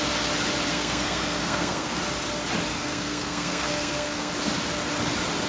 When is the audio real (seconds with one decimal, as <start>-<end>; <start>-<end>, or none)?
0.0-0.7; 2.0-2.7; 4.3-5.5